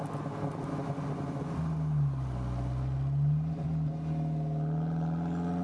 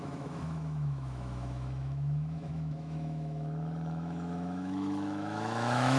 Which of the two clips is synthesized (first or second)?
second